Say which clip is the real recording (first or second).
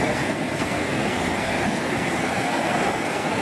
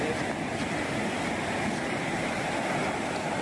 second